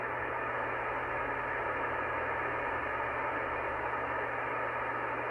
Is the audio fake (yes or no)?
no